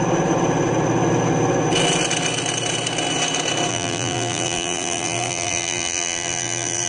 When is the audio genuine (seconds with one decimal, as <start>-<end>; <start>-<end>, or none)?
0.0-3.7